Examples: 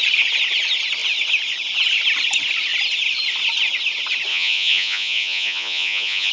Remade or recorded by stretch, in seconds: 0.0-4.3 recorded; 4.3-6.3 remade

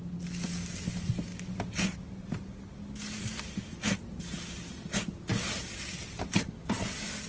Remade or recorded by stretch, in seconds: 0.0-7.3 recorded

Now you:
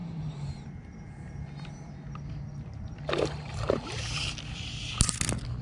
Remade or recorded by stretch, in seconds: 0.0-5.6 recorded

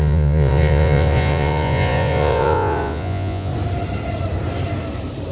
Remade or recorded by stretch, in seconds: 0.0-3.5 remade; 3.5-5.3 recorded